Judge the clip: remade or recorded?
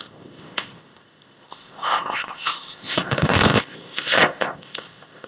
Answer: remade